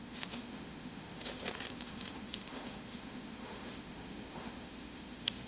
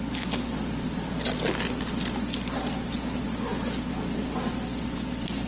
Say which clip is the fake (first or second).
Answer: first